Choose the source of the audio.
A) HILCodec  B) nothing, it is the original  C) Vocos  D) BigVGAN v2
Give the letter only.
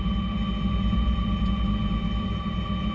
B